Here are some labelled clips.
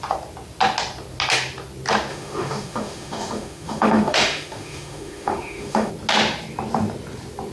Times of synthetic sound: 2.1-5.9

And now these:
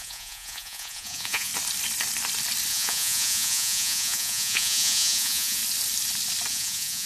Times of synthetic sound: 0.0-1.5; 2.7-5.6; 6.5-7.1

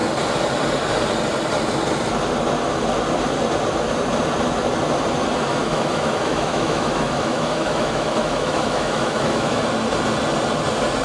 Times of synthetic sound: 5.6-9.6

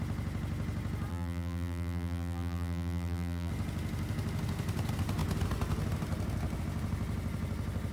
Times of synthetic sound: 1.1-3.5

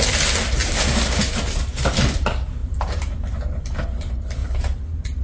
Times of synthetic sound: 0.6-1.9; 2.6-3.6